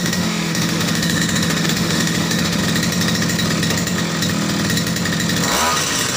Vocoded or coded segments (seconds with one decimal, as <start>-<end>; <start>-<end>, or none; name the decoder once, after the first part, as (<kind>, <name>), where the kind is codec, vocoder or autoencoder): 0.0-2.6 (autoencoder, DAC-VAE)